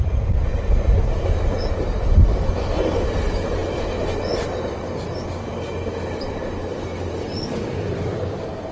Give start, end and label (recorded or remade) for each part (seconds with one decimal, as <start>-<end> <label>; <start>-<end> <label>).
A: 0.0-8.7 recorded